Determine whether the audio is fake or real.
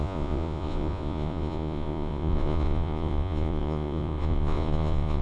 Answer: fake